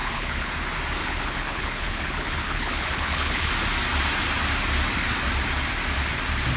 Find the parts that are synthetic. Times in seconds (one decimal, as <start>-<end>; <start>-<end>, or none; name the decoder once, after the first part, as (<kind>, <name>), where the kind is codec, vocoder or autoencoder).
0.0-0.5 (codec, HILCodec); 1.0-3.5